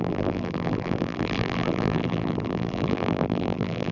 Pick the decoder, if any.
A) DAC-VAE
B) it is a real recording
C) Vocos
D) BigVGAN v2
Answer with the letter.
D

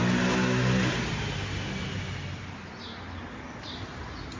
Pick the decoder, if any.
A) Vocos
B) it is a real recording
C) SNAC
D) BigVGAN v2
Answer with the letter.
B